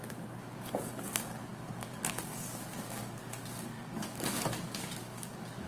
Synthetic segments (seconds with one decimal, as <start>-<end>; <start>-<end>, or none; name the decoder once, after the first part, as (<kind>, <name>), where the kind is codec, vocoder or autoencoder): 0.0-5.7 (codec, DAC)